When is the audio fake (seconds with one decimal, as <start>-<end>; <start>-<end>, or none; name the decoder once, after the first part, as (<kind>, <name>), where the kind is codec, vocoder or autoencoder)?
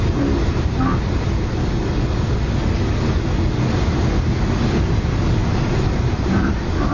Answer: 5.4-6.9 (vocoder, BigVGAN v2)